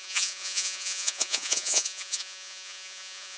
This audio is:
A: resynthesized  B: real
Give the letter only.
A